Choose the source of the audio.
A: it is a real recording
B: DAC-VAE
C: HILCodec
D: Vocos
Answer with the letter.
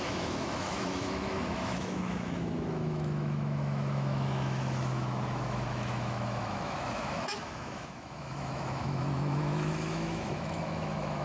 B